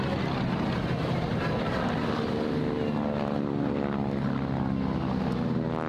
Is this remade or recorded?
recorded